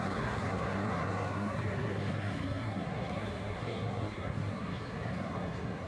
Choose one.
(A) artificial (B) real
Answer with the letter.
A